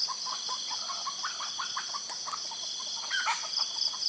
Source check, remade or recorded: recorded